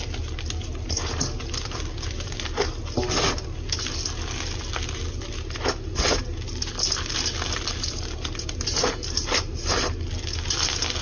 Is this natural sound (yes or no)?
yes